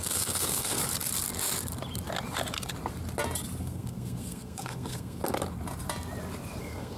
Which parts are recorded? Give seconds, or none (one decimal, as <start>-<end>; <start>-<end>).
0.8-3.6; 5.2-6.6